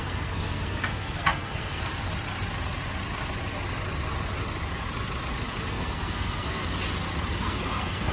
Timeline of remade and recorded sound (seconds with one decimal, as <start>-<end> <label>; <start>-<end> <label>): 0.0-1.9 remade; 1.9-5.7 recorded; 5.7-6.6 remade; 6.6-7.3 recorded; 7.3-8.1 remade

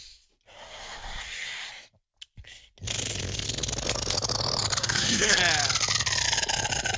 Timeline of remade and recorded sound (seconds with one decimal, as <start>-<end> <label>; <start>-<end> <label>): 0.0-0.6 recorded; 0.6-1.7 remade; 1.7-4.8 recorded; 4.8-5.4 remade; 5.4-7.0 recorded

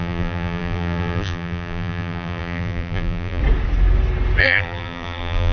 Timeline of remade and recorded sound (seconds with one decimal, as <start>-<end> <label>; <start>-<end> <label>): 0.0-3.4 remade; 3.4-4.4 recorded; 4.4-5.5 remade

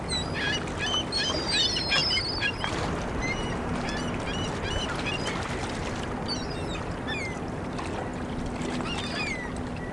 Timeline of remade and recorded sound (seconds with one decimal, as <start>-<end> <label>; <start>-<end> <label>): 0.0-9.9 recorded

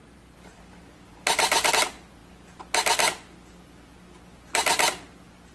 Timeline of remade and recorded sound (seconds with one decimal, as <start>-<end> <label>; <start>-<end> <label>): 0.0-1.7 remade; 1.7-5.5 recorded